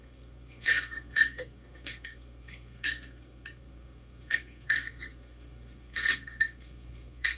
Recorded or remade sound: remade